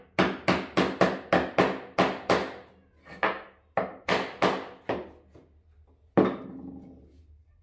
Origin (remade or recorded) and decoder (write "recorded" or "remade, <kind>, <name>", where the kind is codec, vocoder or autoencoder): recorded